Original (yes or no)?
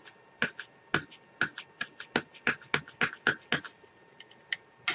yes